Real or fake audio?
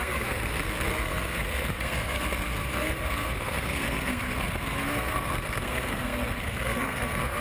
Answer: fake